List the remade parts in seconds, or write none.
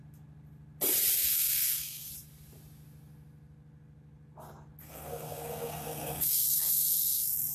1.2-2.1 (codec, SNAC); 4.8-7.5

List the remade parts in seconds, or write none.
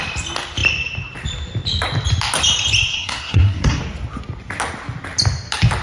2.9-3.8 (codec, SNAC)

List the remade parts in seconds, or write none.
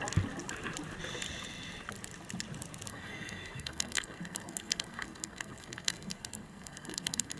2.9-7.4 (codec, SNAC)